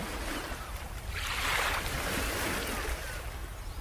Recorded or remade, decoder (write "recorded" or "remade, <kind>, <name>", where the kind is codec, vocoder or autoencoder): recorded